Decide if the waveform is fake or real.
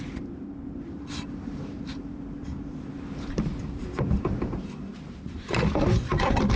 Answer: fake